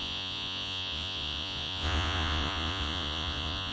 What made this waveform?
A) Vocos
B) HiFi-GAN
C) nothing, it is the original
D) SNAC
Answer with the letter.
A